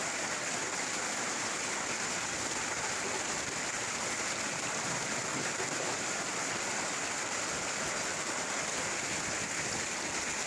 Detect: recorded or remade recorded